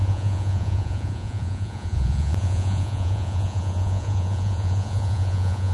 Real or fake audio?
fake